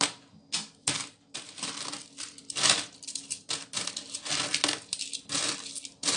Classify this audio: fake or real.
real